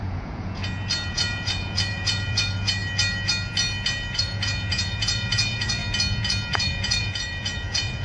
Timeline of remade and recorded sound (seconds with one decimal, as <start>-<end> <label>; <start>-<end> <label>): 0.0-0.6 remade; 0.6-1.1 recorded; 1.1-2.8 remade; 2.8-4.2 recorded; 4.2-5.8 remade; 5.8-6.5 recorded; 6.5-8.0 remade